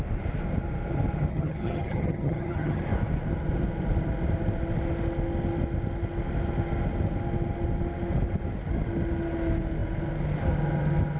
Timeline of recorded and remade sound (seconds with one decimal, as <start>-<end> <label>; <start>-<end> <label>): 0.0-1.3 recorded; 1.3-2.8 remade; 2.8-11.2 recorded